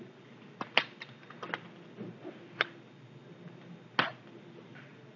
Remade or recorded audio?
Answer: recorded